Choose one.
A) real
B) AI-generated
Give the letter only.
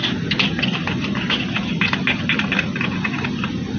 A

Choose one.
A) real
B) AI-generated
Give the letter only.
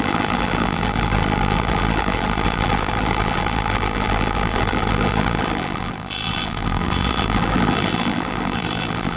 B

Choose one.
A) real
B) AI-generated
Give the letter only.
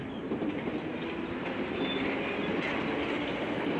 B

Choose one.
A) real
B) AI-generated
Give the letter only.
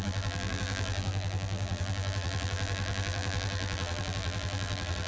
B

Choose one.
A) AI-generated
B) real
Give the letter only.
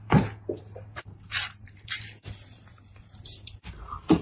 A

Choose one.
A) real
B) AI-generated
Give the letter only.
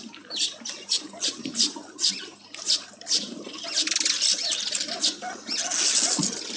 B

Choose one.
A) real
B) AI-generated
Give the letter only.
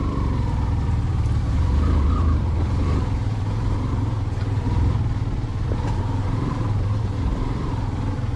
B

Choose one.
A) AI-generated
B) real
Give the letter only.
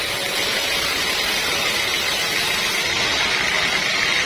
B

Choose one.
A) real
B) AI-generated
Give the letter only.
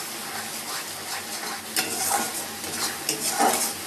A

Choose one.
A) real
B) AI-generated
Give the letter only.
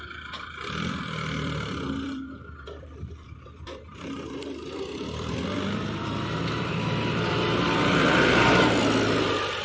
B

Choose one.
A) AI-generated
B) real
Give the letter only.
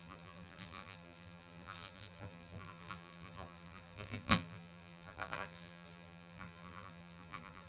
A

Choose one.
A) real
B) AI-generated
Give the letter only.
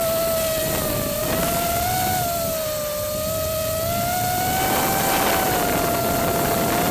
A